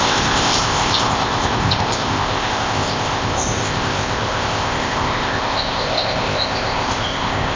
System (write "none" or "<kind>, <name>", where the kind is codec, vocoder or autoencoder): codec, ZipCodec